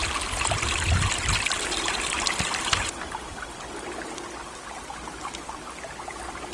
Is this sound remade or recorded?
recorded